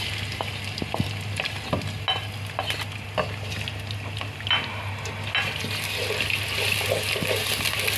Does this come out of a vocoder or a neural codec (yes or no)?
no